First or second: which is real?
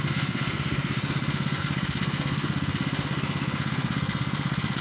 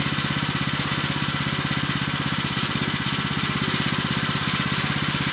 second